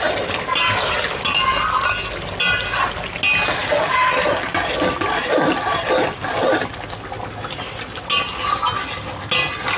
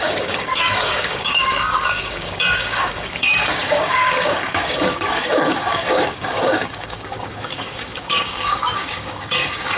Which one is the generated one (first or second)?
second